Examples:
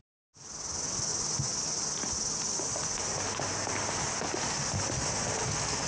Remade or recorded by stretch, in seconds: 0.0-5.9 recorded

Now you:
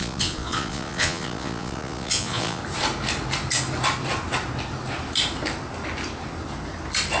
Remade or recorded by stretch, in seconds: 0.0-2.6 remade; 2.6-7.2 recorded

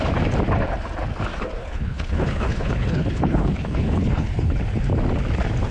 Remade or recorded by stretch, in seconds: 0.0-1.6 recorded; 1.6-4.6 remade; 4.6-5.7 recorded

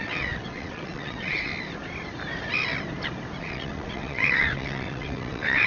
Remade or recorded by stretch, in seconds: 0.0-1.5 remade; 1.5-3.4 recorded; 3.4-5.7 remade

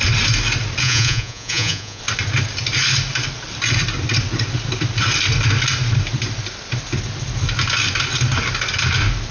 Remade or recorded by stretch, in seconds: 0.0-0.8 recorded; 0.8-2.0 remade; 2.0-9.3 recorded

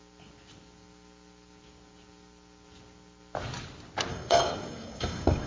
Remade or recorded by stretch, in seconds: 0.0-4.1 recorded; 4.1-5.5 remade

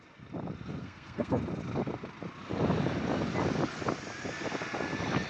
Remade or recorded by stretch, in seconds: 0.0-0.8 recorded; 0.8-1.4 remade; 1.4-5.3 recorded